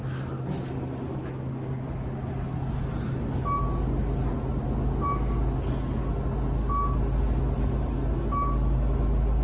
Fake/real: real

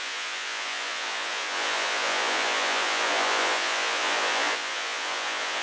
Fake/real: fake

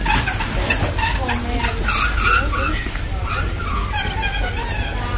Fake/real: real